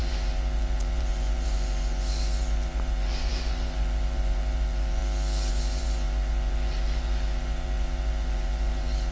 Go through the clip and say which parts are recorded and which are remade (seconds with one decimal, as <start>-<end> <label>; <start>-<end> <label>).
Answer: 0.0-5.0 remade; 5.0-5.5 recorded; 5.5-9.1 remade